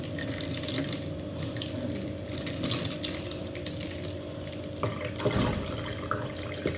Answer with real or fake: real